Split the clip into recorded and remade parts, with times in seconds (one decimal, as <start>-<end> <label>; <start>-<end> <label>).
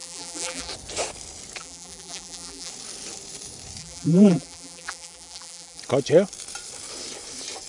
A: 0.0-0.7 remade; 0.7-1.6 recorded; 1.6-2.7 remade; 2.7-3.8 recorded; 3.8-5.8 remade; 5.8-7.7 recorded